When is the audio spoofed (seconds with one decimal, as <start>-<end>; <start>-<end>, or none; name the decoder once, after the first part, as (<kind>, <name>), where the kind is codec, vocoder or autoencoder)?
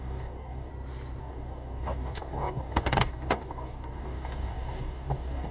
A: 0.0-0.7 (codec, DAC); 1.2-5.5